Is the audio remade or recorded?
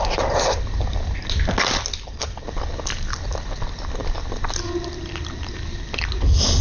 recorded